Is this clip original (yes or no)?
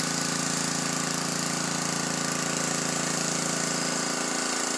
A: yes